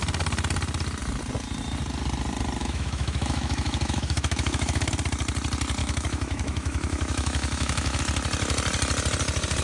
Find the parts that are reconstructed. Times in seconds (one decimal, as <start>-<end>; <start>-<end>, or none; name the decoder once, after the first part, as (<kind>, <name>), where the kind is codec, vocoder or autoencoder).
2.6-4.9 (autoencoder, DAC-VAE); 5.8-8.0